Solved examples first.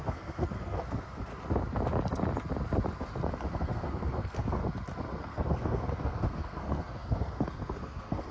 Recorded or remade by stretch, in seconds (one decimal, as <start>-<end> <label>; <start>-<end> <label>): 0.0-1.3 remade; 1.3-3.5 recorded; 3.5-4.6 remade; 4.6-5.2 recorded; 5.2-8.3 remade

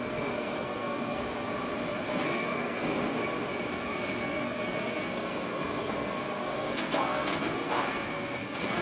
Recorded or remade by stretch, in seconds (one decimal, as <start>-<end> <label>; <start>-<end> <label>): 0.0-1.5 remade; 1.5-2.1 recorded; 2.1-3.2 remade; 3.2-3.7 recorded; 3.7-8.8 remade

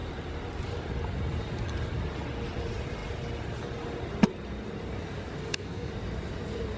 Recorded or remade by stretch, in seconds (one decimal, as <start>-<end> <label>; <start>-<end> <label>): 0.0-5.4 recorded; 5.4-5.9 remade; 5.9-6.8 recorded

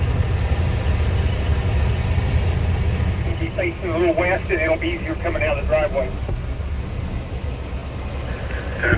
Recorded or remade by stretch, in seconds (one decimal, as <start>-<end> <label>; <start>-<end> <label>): 0.0-6.2 recorded; 6.2-6.8 remade; 6.8-9.0 recorded

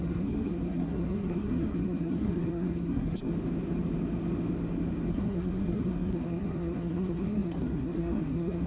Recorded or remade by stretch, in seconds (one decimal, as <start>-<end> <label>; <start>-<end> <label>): 0.0-3.3 remade; 3.3-5.1 recorded; 5.1-8.7 remade

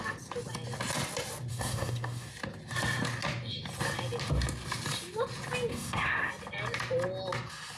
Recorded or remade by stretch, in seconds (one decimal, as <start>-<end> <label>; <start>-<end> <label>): 0.0-1.5 recorded; 1.5-2.3 remade; 2.3-5.7 recorded; 5.7-6.3 remade; 6.3-7.8 recorded

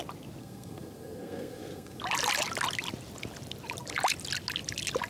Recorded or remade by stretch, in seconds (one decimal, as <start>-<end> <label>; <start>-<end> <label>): 0.0-0.4 recorded; 0.4-2.0 remade; 2.0-5.1 recorded

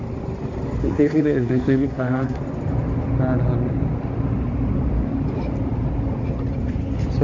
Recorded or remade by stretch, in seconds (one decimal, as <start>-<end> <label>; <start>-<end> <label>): 0.0-0.8 recorded; 0.8-2.4 remade; 2.4-7.2 recorded